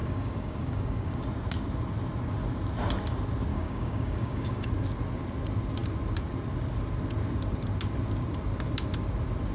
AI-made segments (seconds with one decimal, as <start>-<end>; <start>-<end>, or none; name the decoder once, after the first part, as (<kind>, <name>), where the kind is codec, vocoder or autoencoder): 0.0-1.2 (codec, DAC); 3.5-4.7